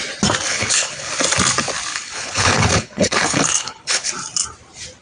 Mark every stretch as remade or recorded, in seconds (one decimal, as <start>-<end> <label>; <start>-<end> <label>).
0.0-0.5 recorded; 0.5-1.1 remade; 1.1-1.9 recorded; 1.9-4.1 remade; 4.1-5.0 recorded